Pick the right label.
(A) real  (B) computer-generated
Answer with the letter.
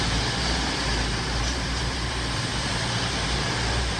B